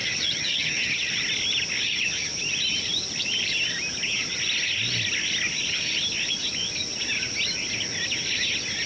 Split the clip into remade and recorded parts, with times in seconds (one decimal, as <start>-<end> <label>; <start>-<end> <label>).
0.0-1.1 remade; 1.1-8.9 recorded